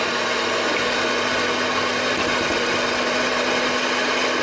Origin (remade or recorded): recorded